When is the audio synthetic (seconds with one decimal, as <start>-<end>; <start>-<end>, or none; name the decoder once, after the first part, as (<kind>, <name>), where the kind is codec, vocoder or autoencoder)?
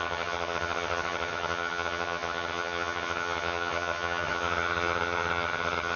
0.0-6.0 (vocoder, HiFi-GAN)